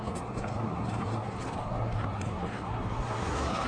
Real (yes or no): no